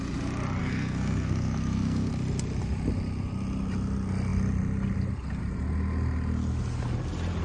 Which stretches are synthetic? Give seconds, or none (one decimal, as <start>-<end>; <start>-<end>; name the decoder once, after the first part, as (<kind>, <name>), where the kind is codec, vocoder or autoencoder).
0.6-2.1 (codec, SNAC)